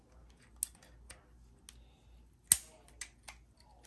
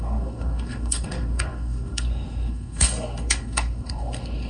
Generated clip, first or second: second